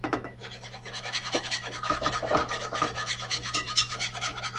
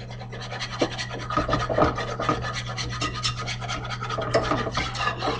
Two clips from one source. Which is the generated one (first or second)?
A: first